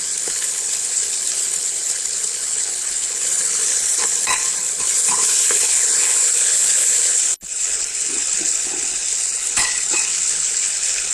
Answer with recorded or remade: remade